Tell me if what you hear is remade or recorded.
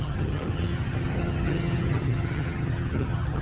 remade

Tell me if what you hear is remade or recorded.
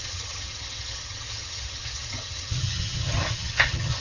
remade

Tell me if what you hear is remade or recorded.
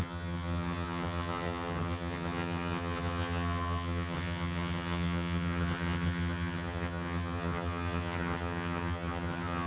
remade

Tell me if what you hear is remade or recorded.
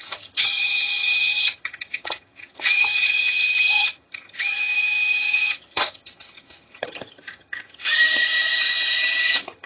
remade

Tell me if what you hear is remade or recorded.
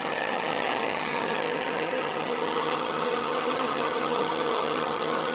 remade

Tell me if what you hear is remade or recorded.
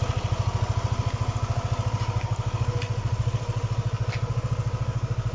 recorded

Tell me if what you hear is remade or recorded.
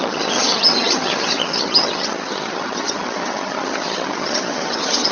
remade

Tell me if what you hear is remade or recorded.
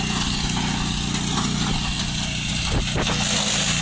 recorded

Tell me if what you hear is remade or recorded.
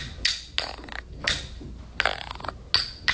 recorded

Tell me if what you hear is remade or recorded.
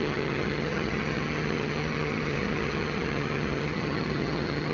remade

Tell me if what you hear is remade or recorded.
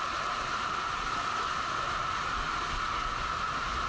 recorded